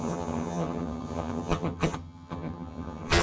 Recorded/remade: remade